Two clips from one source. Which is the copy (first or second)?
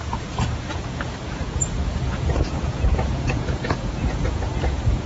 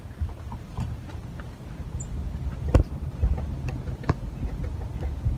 first